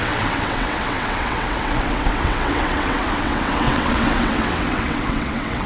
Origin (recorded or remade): remade